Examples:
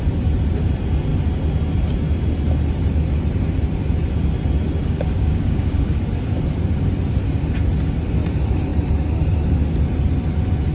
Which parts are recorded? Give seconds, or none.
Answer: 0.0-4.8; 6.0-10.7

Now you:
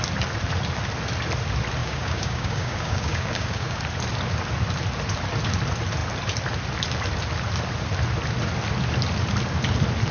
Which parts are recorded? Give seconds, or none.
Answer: 0.0-1.8; 3.8-10.1